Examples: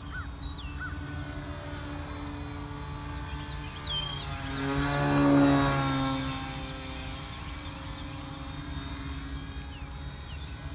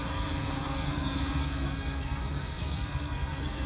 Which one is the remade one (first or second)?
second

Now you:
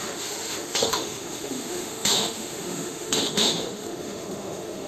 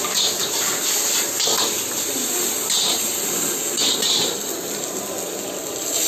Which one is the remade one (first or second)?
first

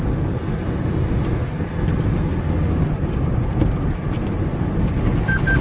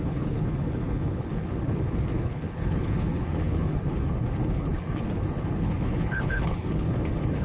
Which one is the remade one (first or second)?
second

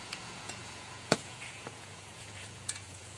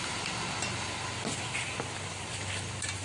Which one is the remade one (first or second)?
first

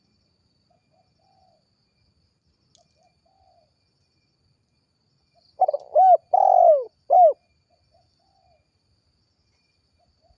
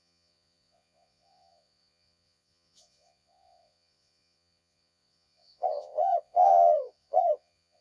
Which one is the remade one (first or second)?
second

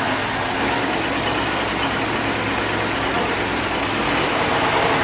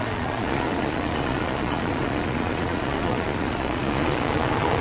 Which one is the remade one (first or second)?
second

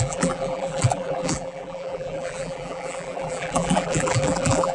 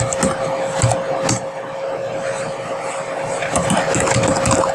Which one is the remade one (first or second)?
first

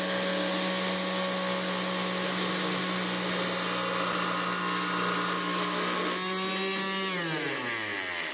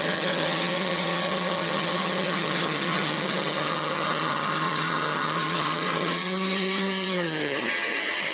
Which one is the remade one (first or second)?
second